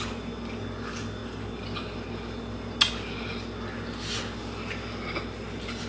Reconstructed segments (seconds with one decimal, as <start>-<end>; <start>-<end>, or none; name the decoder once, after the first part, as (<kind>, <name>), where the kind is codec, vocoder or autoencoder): none